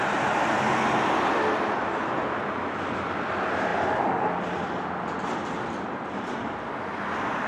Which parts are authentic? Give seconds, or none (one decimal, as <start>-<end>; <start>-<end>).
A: 0.0-7.5